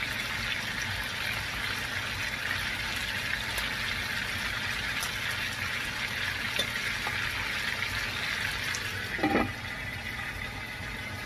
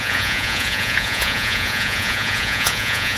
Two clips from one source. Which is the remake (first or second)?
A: second